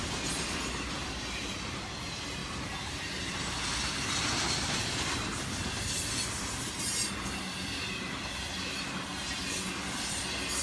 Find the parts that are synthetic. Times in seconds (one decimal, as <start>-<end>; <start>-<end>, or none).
2.4-3.1

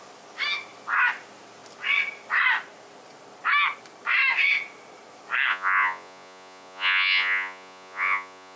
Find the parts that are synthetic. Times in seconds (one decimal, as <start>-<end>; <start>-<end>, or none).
5.5-8.6

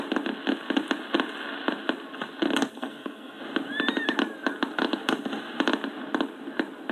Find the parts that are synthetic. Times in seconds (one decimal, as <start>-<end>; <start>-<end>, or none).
2.7-3.4

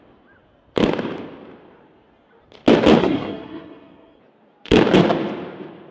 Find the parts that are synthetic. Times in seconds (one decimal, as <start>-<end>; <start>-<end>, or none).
3.0-4.2

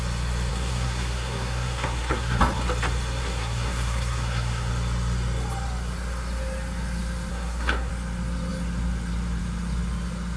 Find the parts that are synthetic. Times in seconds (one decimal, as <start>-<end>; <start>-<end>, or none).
0.5-2.4; 3.2-4.7; 7.3-7.9

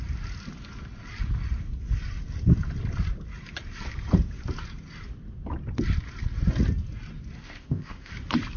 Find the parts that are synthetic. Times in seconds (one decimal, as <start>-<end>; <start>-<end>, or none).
7.4-8.1